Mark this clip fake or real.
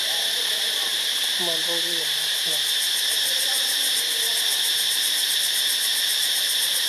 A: fake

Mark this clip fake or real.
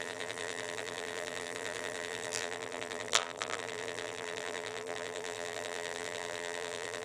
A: fake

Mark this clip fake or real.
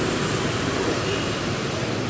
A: fake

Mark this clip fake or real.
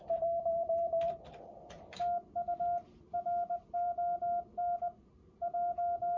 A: fake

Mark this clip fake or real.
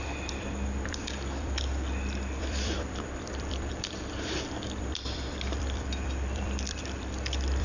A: fake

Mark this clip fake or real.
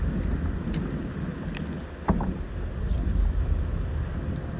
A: real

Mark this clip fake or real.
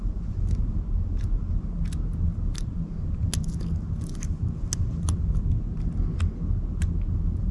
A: real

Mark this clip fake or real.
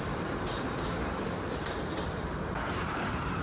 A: fake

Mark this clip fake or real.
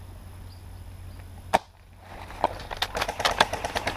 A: real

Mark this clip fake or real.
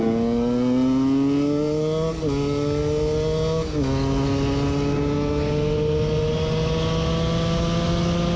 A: real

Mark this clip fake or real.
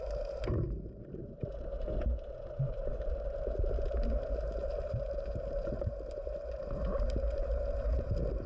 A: fake